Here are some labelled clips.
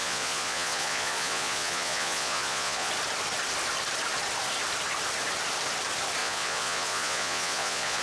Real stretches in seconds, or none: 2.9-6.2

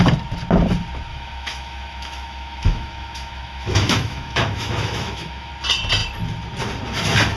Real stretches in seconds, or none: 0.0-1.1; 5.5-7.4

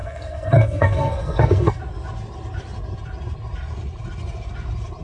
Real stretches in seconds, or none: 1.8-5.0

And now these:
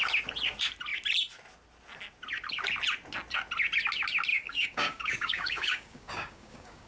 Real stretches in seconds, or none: 0.0-4.3

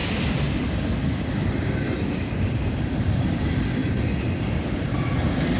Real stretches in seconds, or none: 3.4-3.8; 4.4-5.6